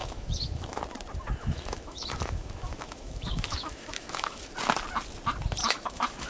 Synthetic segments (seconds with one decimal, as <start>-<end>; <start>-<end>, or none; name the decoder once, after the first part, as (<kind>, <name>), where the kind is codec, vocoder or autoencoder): 0.0-0.8 (autoencoder, DAC-VAE); 1.4-4.5; 5.6-6.3